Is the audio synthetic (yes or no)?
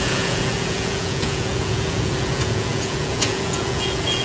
yes